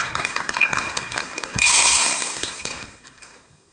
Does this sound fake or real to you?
fake